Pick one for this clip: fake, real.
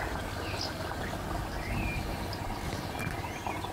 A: fake